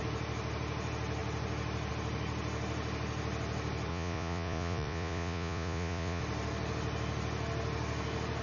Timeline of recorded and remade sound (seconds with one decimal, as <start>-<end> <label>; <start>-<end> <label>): 0.0-3.9 recorded; 3.9-6.2 remade; 6.2-8.4 recorded